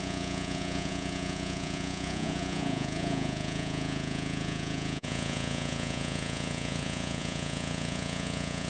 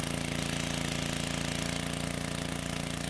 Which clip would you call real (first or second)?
second